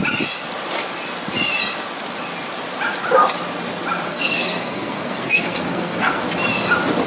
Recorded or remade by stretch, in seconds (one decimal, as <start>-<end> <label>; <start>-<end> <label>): 0.0-4.1 recorded; 4.1-6.2 remade; 6.2-7.1 recorded